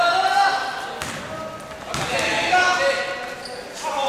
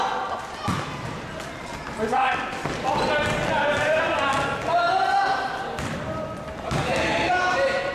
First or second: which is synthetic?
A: second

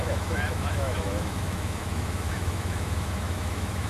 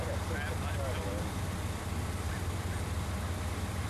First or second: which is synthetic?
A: first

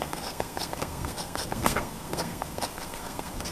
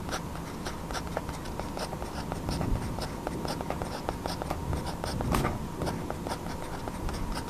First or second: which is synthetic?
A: first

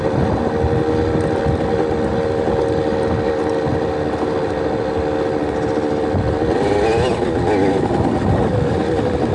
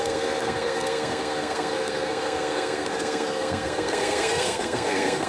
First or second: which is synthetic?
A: second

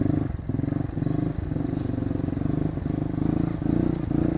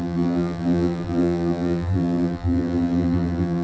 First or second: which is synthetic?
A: second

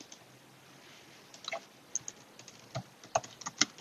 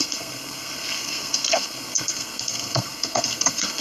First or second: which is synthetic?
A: second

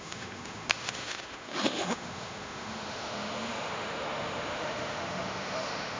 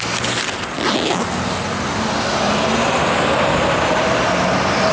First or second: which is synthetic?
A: first